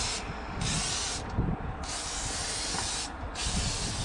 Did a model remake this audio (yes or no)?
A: no